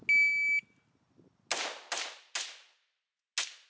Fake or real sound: real